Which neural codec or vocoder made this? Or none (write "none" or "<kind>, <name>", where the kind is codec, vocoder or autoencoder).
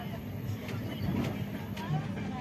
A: none